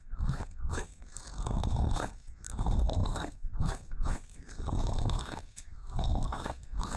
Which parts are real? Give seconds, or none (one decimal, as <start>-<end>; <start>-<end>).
none